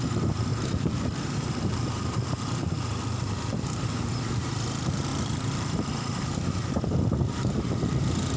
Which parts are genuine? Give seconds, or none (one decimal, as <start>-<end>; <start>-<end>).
none